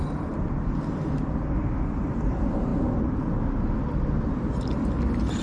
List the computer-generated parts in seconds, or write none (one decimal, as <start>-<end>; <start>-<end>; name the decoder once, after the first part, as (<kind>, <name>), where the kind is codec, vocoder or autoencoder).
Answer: none